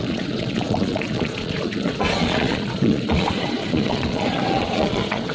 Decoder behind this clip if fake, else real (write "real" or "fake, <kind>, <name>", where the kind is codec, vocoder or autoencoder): fake, vocoder, Vocos